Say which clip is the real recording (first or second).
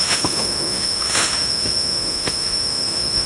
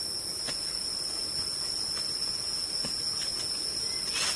second